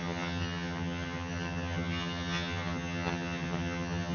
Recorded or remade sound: remade